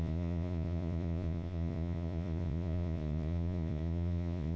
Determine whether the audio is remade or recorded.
remade